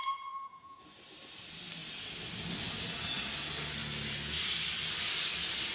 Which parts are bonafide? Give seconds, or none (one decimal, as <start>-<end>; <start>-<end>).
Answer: 0.8-5.7